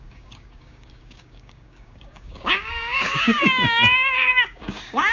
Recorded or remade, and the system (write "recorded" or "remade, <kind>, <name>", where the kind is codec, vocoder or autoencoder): remade, codec, DAC